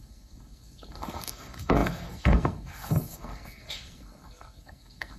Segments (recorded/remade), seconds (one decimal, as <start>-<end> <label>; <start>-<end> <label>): 0.0-5.2 remade